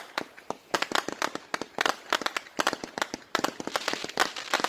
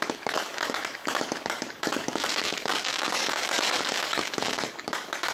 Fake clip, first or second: second